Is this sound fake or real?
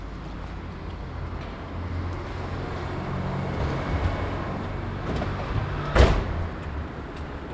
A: real